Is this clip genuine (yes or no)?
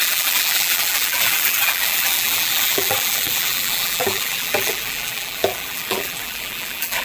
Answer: no